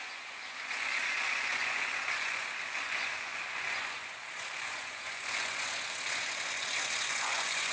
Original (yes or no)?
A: no